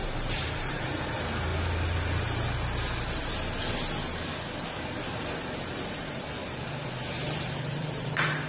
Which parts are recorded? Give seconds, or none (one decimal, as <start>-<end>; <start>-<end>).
1.5-5.2; 6.4-7.1